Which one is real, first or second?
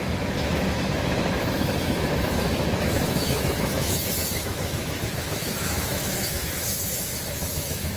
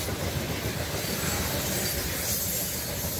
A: second